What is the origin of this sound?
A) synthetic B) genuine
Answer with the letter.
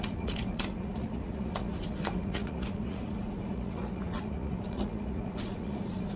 A